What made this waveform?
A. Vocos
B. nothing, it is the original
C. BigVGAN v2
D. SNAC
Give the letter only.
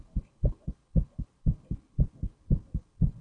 B